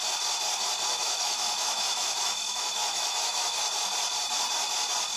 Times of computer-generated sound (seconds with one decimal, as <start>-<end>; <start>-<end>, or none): 0.9-3.6